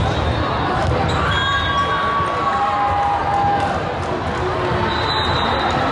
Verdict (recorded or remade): recorded